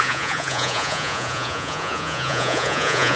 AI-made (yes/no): yes